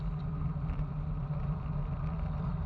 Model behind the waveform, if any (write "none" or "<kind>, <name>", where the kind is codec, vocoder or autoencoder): none